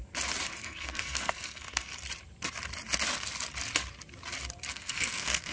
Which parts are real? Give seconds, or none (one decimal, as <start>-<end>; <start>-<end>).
0.0-0.6; 1.9-4.7